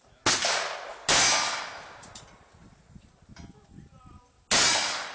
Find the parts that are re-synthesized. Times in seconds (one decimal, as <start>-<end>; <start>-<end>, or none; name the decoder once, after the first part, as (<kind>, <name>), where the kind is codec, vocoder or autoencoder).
none